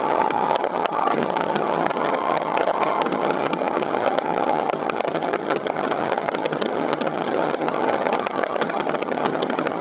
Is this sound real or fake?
fake